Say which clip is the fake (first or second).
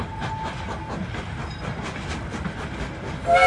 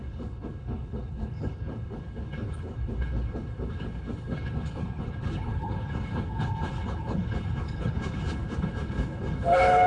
second